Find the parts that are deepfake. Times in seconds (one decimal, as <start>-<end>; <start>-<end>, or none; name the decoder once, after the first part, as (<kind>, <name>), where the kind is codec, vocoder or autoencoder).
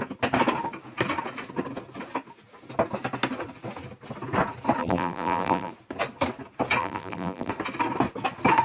4.8-5.7 (vocoder, BigVGAN v2); 6.8-7.5